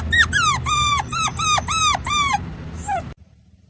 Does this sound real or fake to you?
fake